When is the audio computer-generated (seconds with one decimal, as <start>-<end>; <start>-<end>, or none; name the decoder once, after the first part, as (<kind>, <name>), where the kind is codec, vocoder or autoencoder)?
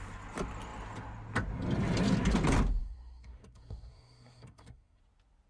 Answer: 2.8-5.0 (codec, SNAC)